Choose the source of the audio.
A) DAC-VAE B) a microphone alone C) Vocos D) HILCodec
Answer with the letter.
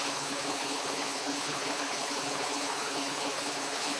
D